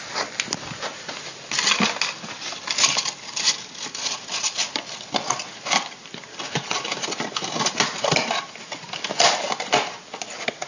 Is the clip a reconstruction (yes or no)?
no